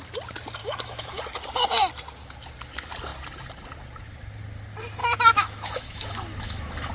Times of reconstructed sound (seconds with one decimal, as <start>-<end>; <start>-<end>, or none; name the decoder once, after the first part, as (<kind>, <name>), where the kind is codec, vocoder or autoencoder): 0.6-1.2 (autoencoder, DAC-VAE); 5.0-6.9